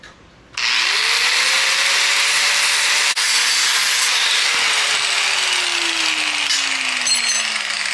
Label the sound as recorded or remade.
recorded